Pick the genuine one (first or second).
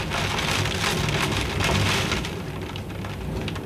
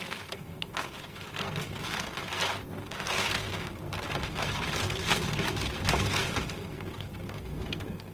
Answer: first